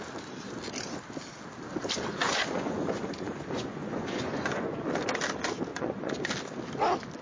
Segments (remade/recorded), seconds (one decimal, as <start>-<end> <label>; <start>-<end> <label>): 0.0-2.2 recorded; 2.2-4.8 remade; 4.8-5.7 recorded; 5.7-6.3 remade; 6.3-7.2 recorded